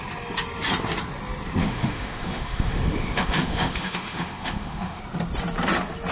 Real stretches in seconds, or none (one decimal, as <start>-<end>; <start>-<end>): 0.0-1.6; 5.0-6.1